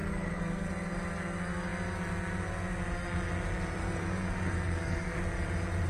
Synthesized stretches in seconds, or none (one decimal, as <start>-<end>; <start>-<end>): 0.0-0.7; 3.8-5.2